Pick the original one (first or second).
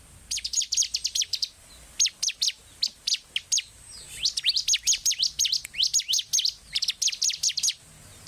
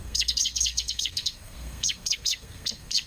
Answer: first